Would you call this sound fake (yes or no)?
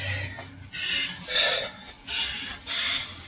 no